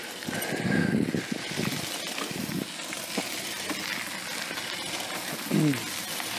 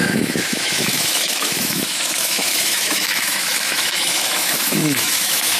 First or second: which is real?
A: first